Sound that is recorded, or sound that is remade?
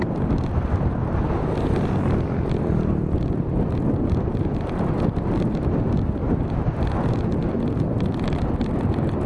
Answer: recorded